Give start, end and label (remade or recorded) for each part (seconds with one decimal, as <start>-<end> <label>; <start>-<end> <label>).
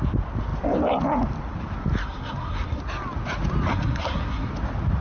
0.0-2.0 recorded; 2.0-2.8 remade; 2.8-3.7 recorded; 3.7-4.5 remade; 4.5-5.0 recorded